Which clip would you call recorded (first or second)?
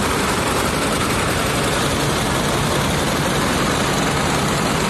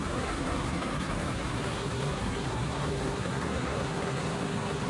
first